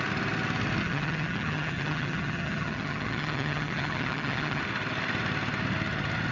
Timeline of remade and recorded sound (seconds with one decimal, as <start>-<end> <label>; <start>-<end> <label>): 0.0-0.8 recorded; 0.8-4.6 remade; 4.6-6.3 recorded